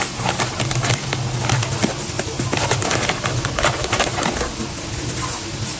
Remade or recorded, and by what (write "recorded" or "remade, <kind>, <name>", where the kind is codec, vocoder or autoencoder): recorded